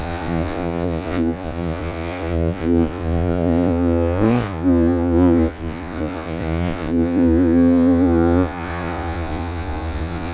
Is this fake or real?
fake